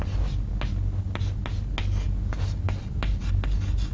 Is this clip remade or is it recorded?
recorded